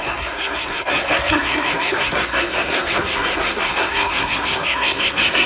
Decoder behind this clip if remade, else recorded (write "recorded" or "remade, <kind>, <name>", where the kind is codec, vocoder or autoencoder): remade, codec, SNAC